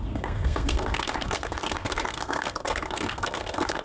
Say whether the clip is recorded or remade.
remade